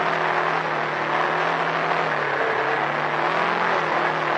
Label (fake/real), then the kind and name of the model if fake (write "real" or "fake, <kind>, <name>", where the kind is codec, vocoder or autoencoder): real